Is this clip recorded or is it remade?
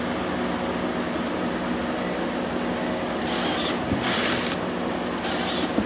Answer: recorded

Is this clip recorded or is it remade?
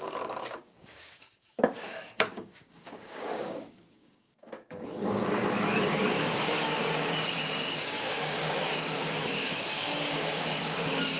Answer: remade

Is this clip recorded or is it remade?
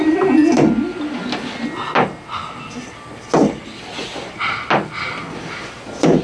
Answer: recorded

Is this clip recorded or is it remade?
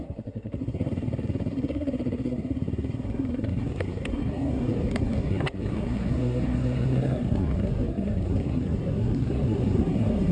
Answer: remade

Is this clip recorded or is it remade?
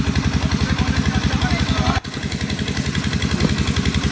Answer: recorded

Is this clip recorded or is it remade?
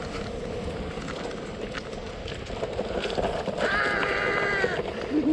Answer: recorded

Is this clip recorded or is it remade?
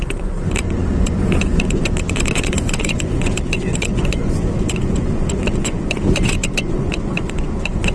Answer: remade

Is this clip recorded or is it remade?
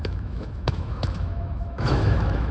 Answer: remade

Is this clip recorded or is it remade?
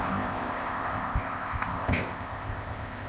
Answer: remade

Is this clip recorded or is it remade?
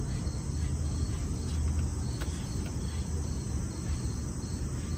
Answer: recorded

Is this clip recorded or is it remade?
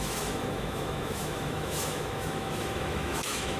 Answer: remade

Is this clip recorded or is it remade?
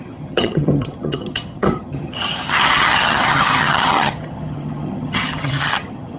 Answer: remade